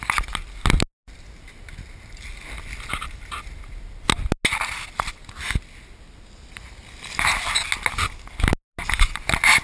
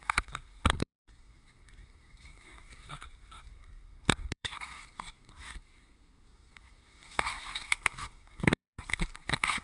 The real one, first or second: first